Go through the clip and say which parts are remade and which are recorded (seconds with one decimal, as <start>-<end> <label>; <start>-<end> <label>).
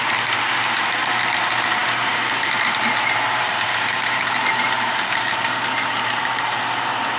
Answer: 0.0-7.2 remade